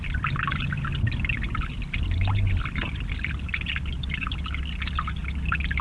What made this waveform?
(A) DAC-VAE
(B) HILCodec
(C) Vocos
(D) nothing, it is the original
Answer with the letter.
D